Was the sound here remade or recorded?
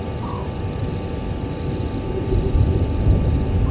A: recorded